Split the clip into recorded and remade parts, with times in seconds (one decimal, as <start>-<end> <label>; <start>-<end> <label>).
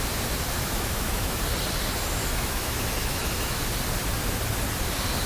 0.0-0.6 recorded; 0.6-1.4 remade; 1.4-2.2 recorded; 2.2-3.6 remade; 3.6-5.3 recorded